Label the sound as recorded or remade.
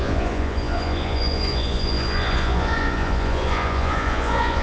remade